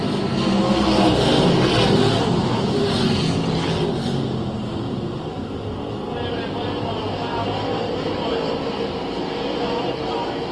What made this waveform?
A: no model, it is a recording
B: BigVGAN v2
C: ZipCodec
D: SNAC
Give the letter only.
A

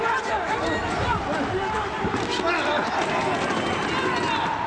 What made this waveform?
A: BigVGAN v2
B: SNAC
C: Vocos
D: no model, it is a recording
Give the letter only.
D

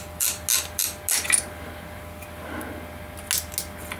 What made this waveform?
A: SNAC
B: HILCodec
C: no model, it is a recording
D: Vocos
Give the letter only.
C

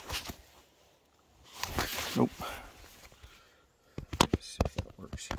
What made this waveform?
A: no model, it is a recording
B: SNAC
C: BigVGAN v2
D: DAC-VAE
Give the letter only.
A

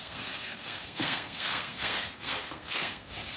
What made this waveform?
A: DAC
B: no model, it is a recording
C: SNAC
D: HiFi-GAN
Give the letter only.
C